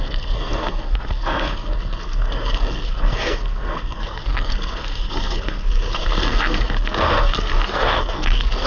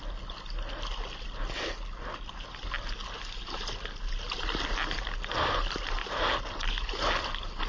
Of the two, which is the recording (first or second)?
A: second